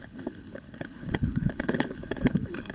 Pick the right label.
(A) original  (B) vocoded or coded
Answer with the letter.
B